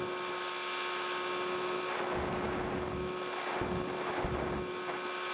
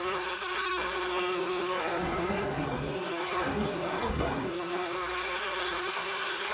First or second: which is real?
first